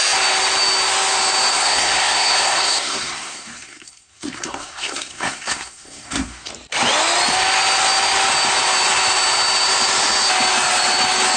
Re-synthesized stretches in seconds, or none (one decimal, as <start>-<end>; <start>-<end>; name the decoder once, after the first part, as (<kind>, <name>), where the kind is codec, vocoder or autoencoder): 1.5-6.5 (codec, SNAC)